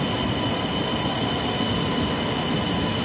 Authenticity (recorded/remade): recorded